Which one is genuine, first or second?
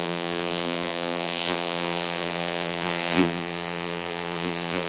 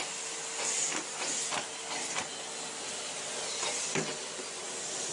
second